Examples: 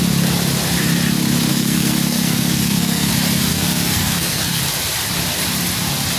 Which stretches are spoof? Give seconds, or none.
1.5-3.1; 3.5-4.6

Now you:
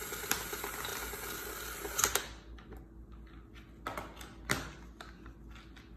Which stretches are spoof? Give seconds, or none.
none

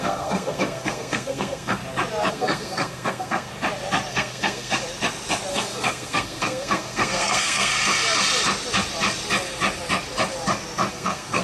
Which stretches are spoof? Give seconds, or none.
0.0-1.8; 2.3-3.5; 4.1-4.8; 5.5-7.7; 10.9-11.4

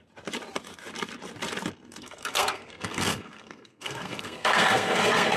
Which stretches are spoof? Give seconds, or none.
2.0-5.4

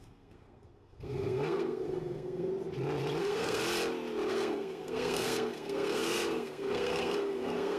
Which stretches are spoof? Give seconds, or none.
0.0-2.5; 3.2-3.6; 4.3-7.8